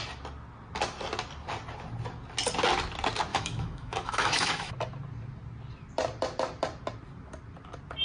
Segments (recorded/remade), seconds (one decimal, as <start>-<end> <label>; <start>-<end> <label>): 0.0-3.3 recorded; 3.3-4.7 remade; 4.7-8.0 recorded